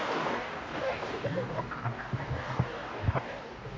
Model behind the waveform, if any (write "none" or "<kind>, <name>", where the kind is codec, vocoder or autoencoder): codec, DAC